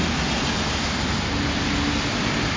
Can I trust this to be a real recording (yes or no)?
yes